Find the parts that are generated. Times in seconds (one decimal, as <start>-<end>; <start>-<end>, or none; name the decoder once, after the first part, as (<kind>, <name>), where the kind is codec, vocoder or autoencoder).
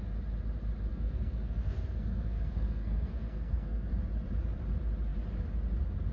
0.9-3.9 (codec, SNAC)